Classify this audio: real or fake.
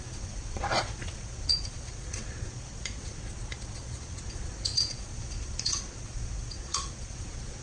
fake